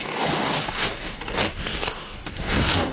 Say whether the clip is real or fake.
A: fake